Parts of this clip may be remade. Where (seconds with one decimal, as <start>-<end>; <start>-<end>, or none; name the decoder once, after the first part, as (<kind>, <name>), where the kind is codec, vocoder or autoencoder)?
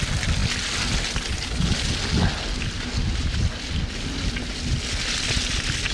none